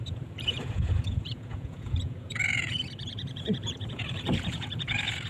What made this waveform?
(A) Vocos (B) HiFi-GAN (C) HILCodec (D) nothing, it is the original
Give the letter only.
A